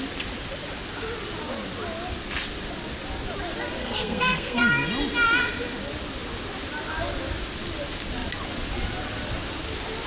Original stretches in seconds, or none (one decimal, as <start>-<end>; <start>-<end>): 0.0-3.8; 4.7-10.1